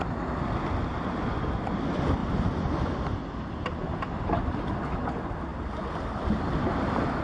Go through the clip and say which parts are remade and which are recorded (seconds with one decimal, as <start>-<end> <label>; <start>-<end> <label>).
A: 0.0-7.2 recorded